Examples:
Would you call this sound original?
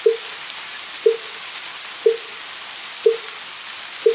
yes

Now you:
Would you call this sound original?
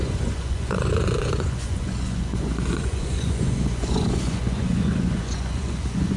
no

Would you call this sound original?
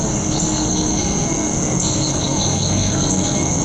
no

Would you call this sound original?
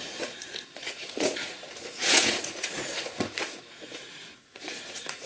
no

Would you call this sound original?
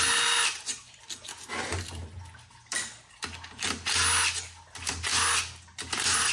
yes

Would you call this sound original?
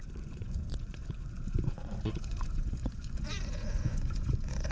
no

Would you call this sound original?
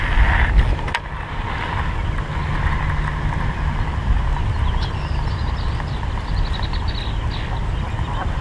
yes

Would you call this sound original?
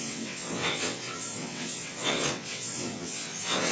no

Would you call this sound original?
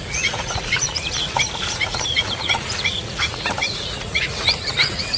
no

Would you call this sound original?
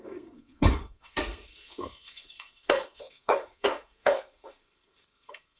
no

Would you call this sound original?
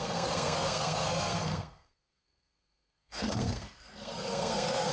no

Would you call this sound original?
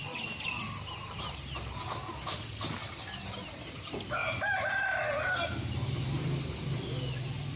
yes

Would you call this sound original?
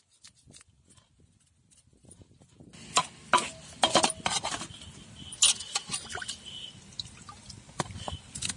yes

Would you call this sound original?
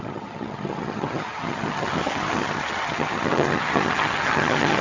no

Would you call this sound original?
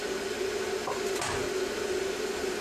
yes